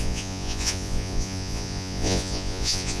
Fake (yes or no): yes